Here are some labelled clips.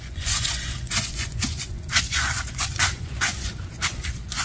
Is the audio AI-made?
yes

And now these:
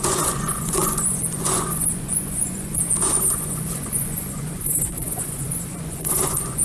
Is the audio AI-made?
yes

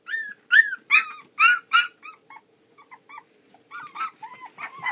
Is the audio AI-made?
no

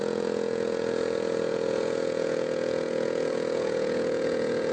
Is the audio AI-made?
yes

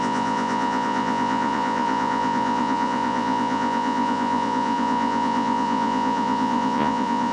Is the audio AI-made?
yes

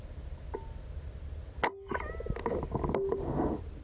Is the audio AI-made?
no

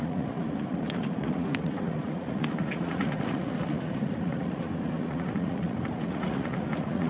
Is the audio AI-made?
yes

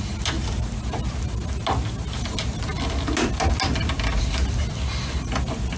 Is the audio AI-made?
no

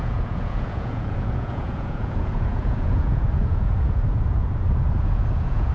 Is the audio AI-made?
yes